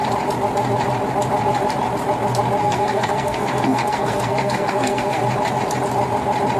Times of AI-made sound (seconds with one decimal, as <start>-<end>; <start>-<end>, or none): 2.6-5.2